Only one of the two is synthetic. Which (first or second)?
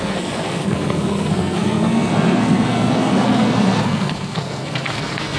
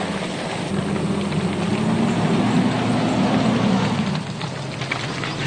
first